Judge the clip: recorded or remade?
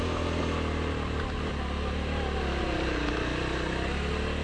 recorded